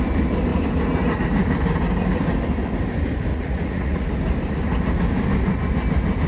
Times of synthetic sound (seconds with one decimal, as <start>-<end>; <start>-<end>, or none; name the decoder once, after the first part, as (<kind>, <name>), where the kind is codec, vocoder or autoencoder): 3.3-4.1 (vocoder, Vocos)